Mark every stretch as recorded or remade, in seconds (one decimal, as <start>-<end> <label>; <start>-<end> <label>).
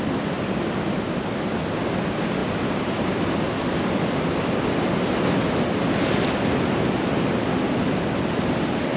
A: 0.0-9.0 recorded